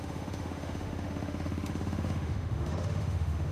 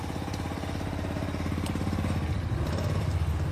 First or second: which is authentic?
second